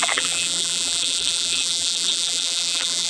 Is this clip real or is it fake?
fake